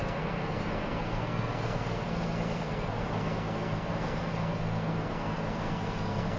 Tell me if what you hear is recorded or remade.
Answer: remade